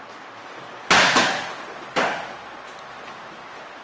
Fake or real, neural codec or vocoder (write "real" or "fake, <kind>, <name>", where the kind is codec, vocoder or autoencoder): real